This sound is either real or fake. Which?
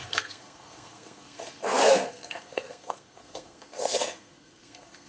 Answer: fake